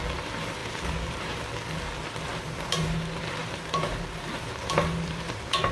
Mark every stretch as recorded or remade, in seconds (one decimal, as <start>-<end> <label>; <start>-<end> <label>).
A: 0.0-0.6 recorded; 0.6-1.4 remade; 1.4-2.3 recorded; 2.3-5.7 remade